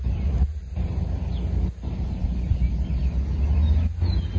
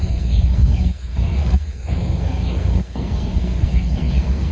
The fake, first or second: second